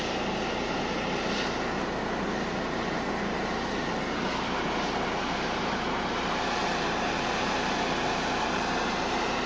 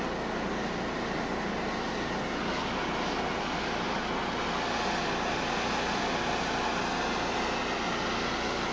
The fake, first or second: first